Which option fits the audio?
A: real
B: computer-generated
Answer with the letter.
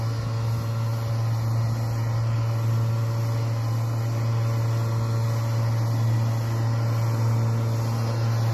A